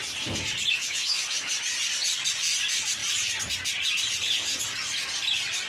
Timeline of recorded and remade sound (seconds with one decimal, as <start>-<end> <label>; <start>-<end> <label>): 0.0-0.8 recorded; 0.8-1.5 remade; 1.5-5.7 recorded